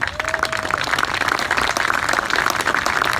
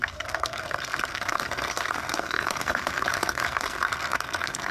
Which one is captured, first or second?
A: first